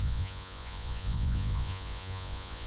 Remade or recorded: remade